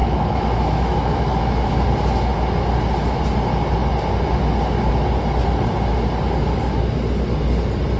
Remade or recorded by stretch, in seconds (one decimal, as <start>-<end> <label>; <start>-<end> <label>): 0.0-1.7 remade; 1.7-8.0 recorded